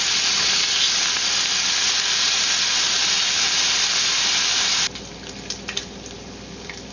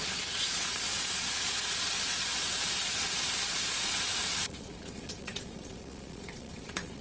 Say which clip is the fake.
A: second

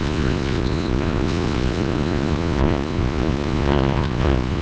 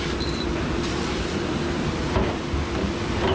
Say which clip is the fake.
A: first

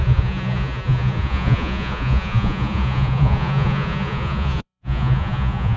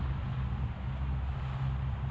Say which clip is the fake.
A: first